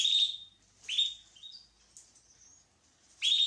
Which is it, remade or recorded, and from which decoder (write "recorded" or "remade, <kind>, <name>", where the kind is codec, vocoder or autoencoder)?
recorded